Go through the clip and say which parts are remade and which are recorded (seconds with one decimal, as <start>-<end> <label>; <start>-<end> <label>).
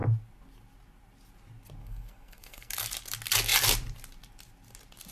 0.0-1.8 recorded; 1.8-2.7 remade; 2.7-5.1 recorded